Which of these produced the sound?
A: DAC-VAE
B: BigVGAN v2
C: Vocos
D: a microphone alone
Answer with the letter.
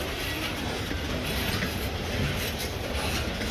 D